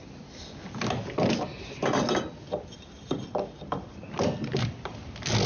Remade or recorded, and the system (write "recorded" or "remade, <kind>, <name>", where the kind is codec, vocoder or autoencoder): recorded